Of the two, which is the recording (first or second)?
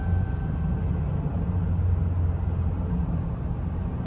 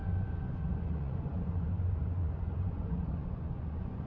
first